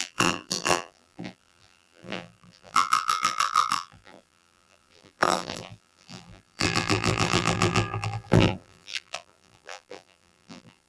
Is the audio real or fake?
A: fake